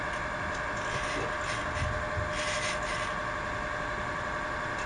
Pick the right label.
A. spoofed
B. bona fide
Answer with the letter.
B